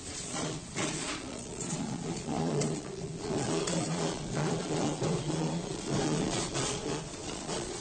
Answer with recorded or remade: remade